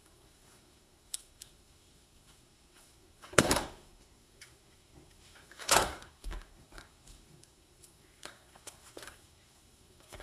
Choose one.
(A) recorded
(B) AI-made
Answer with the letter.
B